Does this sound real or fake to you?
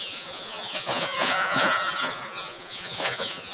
fake